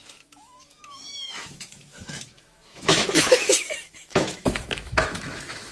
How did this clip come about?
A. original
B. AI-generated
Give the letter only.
B